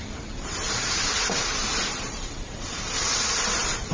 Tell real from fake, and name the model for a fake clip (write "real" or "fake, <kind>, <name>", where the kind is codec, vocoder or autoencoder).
fake, vocoder, BigVGAN v2